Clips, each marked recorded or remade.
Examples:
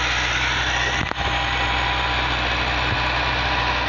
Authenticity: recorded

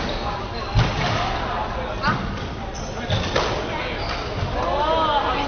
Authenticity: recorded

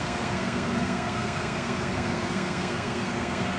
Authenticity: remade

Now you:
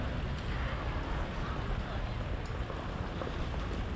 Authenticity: recorded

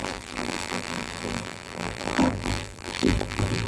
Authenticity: remade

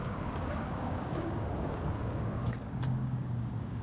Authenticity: remade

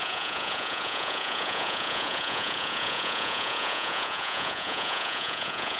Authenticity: remade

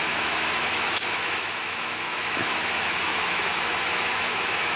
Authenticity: remade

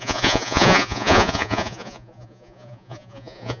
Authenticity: remade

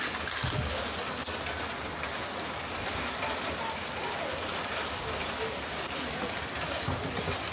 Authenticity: recorded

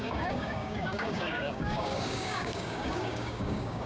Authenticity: remade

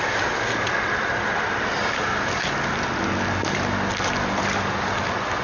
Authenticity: recorded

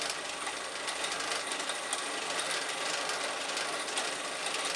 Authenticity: recorded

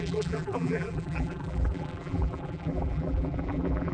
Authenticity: remade